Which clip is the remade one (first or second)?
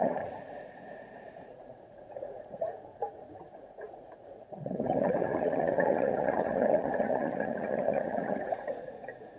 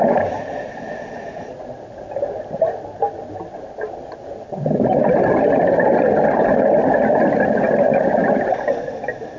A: first